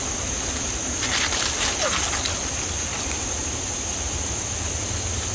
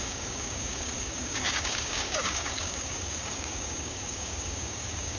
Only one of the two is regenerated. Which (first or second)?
second